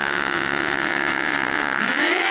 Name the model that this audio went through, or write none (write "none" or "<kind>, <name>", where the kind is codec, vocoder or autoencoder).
vocoder, WaveNeXt